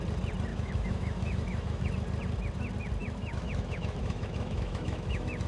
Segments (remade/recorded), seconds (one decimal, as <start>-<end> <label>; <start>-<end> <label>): 0.0-0.5 recorded; 0.5-1.9 remade; 1.9-3.0 recorded; 3.0-5.5 remade